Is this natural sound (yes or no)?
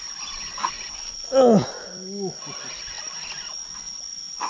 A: yes